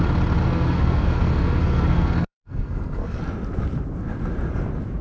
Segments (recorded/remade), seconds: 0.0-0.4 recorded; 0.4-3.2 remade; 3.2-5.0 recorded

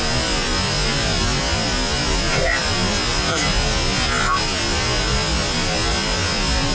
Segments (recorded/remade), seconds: 0.0-6.7 recorded

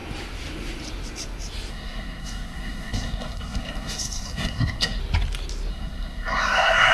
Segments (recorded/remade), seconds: 0.0-1.7 recorded; 1.7-5.0 remade; 5.0-5.7 recorded; 5.7-6.9 remade

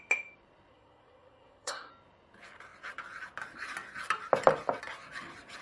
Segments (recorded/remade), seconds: 0.0-0.7 recorded; 0.7-1.9 remade; 1.9-5.6 recorded

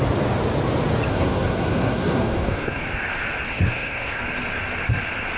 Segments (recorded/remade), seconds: 0.0-1.1 recorded; 1.1-2.8 remade; 2.8-3.5 recorded; 3.5-4.2 remade; 4.2-5.4 recorded

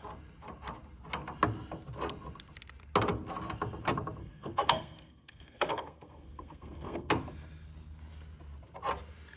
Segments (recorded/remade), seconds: 0.0-4.2 recorded; 4.2-7.1 remade; 7.1-9.4 recorded

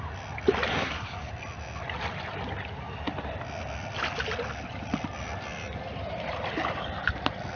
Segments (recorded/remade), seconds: 0.0-0.7 recorded; 0.7-1.3 remade; 1.3-7.6 recorded